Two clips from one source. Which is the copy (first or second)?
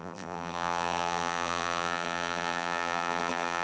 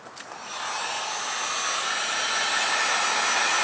first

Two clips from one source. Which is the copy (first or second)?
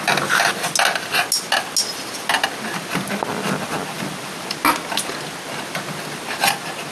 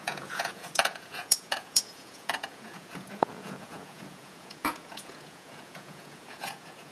second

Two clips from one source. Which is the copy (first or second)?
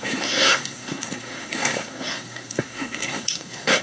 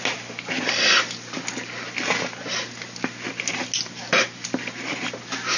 first